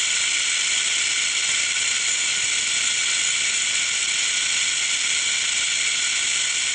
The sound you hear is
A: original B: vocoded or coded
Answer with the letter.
A